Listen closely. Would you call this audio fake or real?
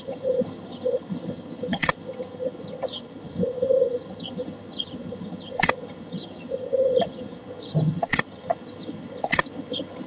fake